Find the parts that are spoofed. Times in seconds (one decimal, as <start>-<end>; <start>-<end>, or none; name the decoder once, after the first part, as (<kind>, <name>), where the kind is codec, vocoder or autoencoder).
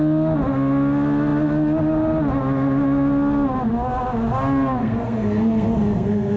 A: 4.8-6.4 (codec, SNAC)